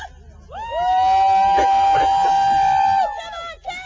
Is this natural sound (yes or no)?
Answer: yes